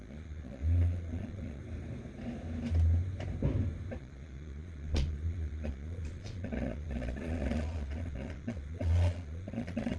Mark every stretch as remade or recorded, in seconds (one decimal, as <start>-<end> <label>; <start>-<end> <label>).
0.0-1.6 remade; 1.6-4.0 recorded; 4.0-10.0 remade